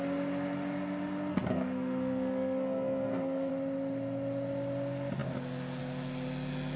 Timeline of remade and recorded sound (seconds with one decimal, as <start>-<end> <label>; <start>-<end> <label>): 0.0-1.3 recorded; 1.3-3.5 remade; 3.5-6.8 recorded